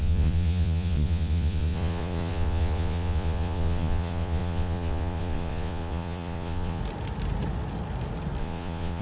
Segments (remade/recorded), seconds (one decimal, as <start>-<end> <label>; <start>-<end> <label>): 0.0-6.8 remade; 6.8-8.4 recorded; 8.4-9.0 remade